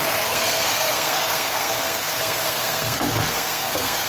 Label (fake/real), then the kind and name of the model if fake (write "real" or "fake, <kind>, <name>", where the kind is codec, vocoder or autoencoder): fake, codec, SNAC